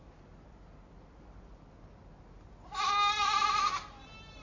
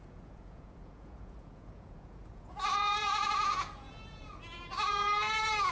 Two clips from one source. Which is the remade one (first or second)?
second